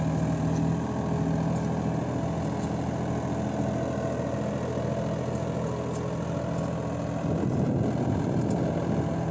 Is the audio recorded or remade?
recorded